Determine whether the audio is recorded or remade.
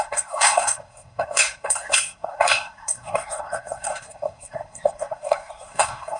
remade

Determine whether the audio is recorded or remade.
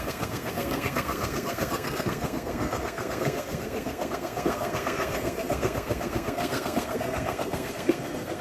remade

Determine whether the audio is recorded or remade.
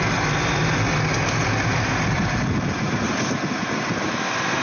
recorded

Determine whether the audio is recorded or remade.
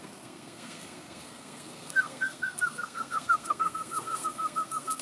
remade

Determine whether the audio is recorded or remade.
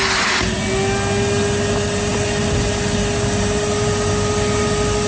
recorded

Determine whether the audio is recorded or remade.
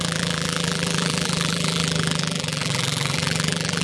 remade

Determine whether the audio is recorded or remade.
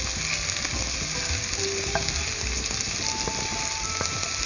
recorded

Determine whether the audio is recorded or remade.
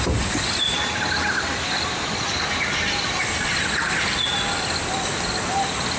recorded